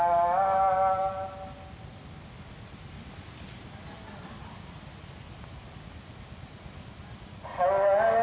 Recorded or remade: recorded